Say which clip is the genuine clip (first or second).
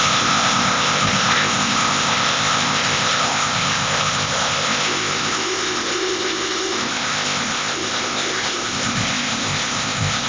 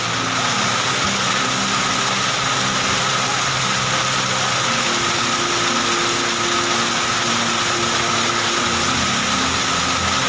second